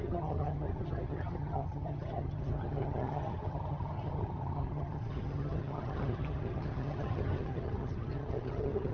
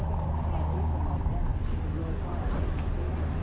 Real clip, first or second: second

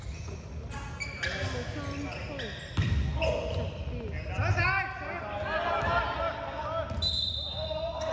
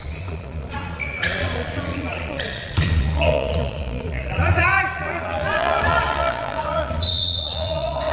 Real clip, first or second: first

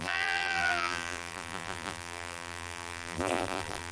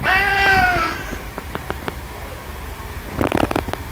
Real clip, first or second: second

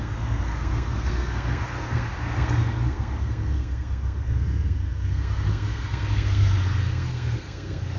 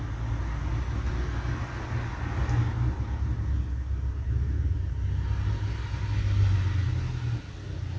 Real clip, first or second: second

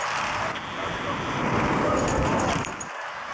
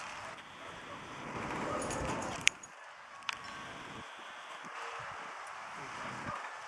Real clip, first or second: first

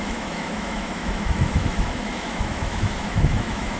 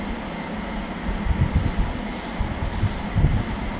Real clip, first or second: second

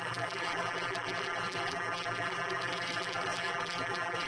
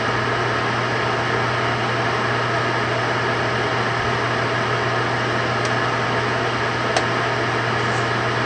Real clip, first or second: second